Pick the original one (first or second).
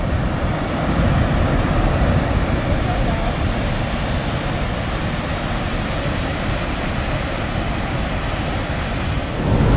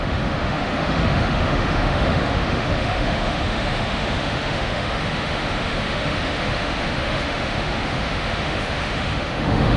first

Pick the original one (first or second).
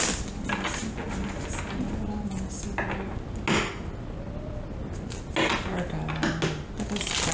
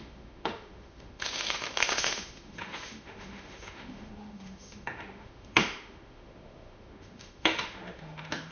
first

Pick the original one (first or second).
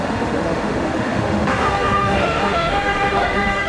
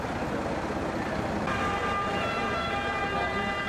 second